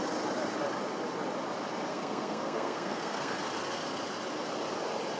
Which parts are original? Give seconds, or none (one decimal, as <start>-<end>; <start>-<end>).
0.0-1.9; 3.4-5.2